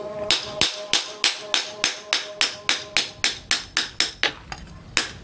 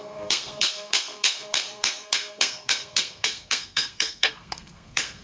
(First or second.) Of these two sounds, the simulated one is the second